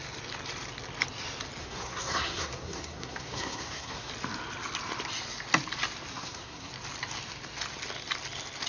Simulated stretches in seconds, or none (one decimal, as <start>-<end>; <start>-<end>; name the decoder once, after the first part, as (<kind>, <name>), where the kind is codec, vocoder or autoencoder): 1.6-4.1 (codec, SNAC); 6.1-6.7